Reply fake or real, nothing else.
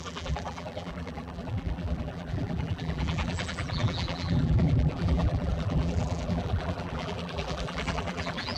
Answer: fake